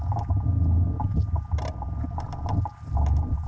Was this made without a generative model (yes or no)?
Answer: yes